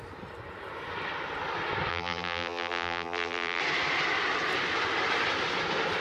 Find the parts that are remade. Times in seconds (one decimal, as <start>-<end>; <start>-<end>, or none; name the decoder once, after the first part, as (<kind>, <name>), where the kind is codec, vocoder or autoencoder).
1.9-3.6 (vocoder, BigVGAN v2)